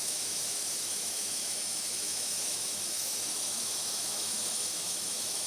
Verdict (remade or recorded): remade